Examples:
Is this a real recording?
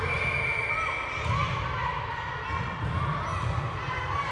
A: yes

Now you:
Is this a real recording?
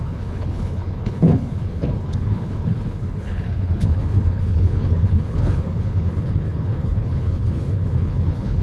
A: no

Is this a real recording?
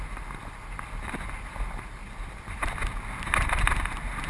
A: yes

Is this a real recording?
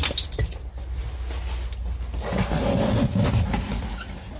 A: yes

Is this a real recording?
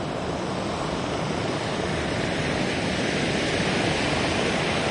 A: yes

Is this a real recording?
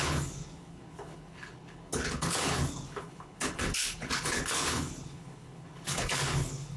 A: no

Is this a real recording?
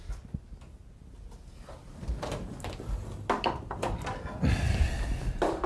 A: yes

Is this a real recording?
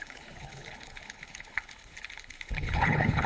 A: no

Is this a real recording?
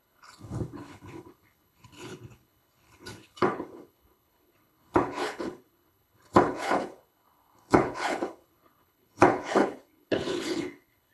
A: no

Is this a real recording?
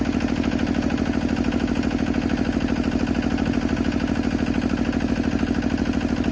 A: yes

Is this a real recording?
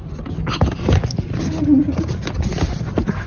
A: yes